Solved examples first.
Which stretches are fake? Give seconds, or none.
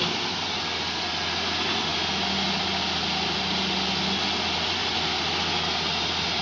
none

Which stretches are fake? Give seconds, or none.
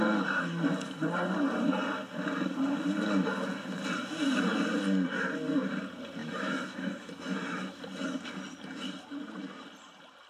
6.2-7.8 (autoencoder, DAC-VAE)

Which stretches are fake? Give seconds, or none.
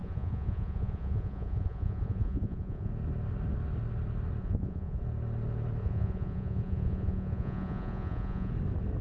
0.0-2.9 (vocoder, Vocos); 4.4-5.0; 5.8-8.5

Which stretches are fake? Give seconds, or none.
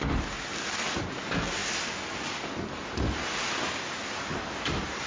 none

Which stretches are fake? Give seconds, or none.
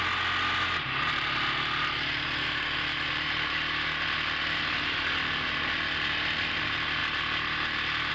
none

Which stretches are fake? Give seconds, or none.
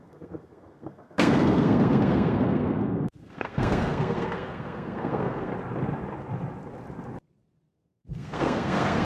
0.0-5.5 (codec, SNAC); 7.7-9.0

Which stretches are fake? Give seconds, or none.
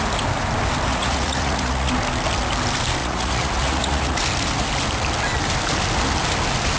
0.9-1.9 (vocoder, Vocos); 3.0-4.2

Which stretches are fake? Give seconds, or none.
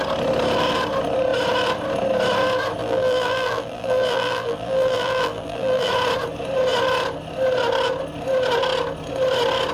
2.8-5.9 (vocoder, BigVGAN v2)